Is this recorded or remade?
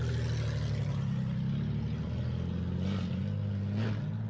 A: recorded